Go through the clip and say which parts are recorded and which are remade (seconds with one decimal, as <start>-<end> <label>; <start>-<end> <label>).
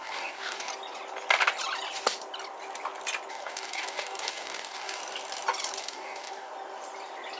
0.0-0.7 remade; 0.7-3.3 recorded; 3.3-5.0 remade; 5.0-5.8 recorded; 5.8-6.5 remade; 6.5-7.4 recorded